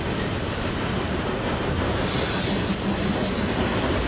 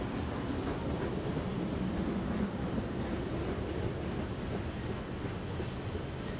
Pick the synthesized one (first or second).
first